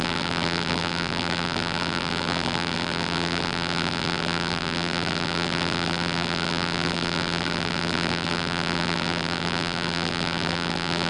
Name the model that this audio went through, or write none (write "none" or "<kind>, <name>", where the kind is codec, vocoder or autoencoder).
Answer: vocoder, BigVGAN v2